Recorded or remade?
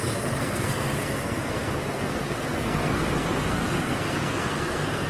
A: remade